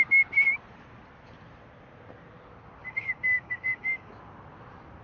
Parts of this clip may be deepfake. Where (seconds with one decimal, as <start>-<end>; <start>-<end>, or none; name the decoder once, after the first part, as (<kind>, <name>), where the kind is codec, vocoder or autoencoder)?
2.8-4.1 (codec, DAC)